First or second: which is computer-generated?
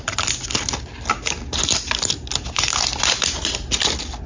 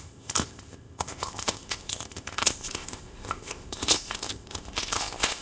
second